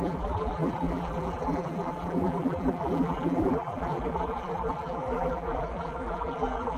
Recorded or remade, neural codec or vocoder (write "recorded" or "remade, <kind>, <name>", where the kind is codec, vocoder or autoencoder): remade, vocoder, BigVGAN v2